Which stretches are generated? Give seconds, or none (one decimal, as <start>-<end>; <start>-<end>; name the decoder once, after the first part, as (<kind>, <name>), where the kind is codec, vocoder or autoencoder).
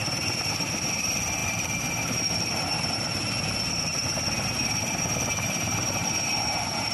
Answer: 0.0-6.9 (vocoder, BigVGAN v2)